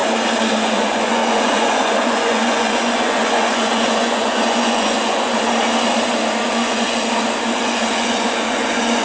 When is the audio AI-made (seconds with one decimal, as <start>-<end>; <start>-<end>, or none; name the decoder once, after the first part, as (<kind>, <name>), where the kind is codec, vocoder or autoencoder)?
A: 0.6-5.3 (vocoder, Vocos); 6.5-7.0; 7.6-9.0